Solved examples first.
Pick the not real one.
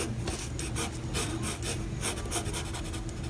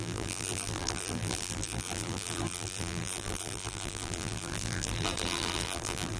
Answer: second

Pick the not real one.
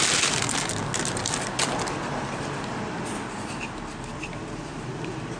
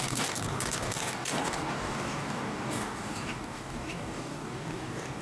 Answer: second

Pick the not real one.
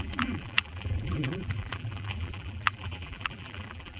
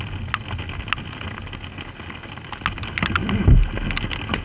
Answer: first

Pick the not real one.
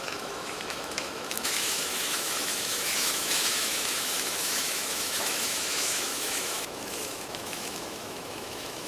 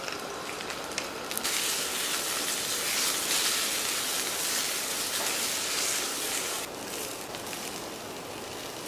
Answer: first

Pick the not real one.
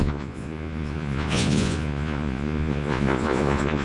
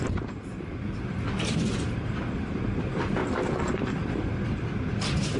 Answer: first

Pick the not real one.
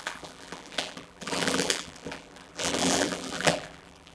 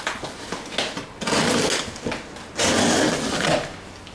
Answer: first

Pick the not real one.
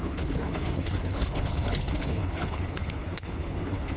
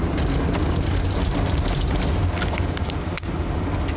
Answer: first